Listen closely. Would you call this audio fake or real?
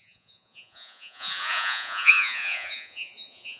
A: fake